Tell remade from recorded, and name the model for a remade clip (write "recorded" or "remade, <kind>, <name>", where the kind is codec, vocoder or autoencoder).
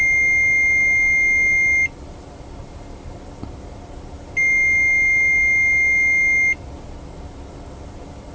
recorded